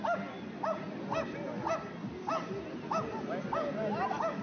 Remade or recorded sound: recorded